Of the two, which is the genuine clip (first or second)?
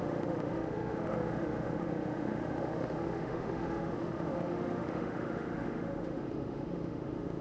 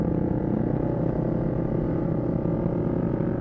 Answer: second